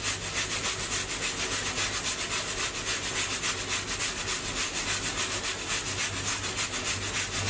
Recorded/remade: recorded